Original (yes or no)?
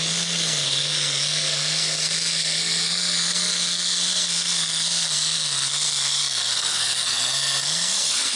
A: no